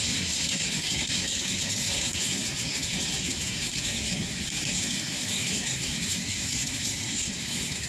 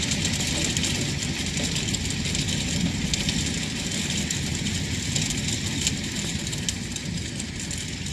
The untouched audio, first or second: second